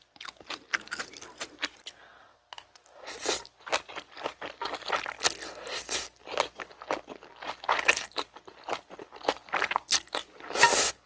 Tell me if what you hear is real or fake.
real